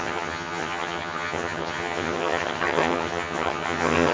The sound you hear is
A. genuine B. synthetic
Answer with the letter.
B